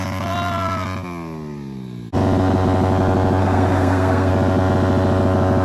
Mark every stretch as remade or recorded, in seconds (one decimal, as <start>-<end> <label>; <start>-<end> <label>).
0.0-3.4 recorded; 3.4-4.3 remade; 4.3-5.6 recorded